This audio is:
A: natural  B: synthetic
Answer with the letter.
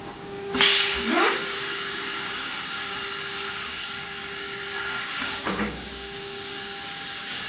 B